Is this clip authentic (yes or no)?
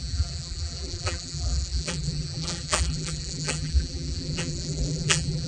no